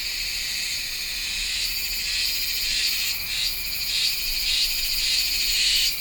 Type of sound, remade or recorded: recorded